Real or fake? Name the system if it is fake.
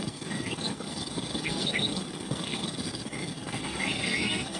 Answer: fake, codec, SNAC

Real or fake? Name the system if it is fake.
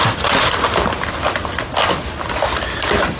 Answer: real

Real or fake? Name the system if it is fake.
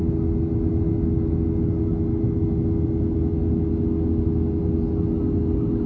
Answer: real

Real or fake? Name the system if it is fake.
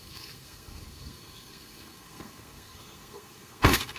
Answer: fake, codec, SNAC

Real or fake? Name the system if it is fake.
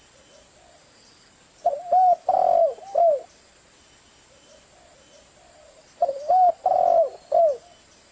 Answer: real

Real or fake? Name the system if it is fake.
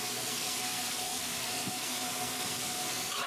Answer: fake, codec, SNAC